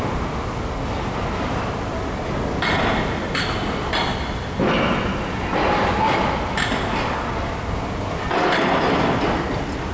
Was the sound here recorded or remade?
recorded